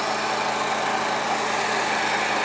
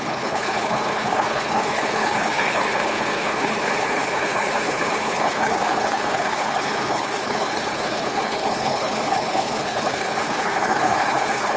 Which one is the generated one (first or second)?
second